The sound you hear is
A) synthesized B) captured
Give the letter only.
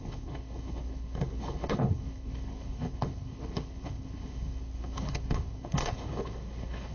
A